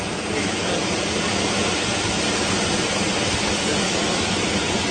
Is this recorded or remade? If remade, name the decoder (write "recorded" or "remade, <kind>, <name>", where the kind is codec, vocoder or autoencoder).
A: recorded